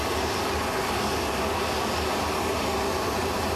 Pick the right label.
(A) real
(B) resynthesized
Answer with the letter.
A